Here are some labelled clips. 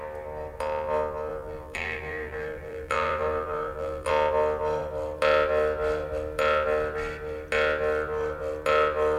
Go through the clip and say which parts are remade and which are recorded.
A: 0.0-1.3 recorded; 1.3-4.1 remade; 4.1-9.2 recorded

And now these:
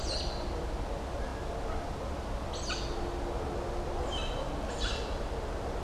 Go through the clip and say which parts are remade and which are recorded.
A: 0.0-5.8 recorded